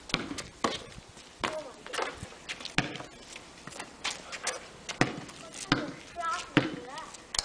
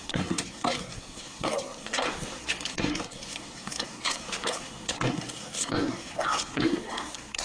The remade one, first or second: second